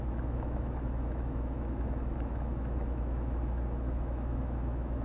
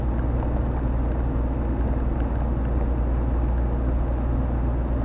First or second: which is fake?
first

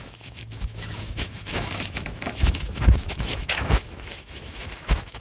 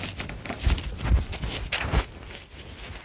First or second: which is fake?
first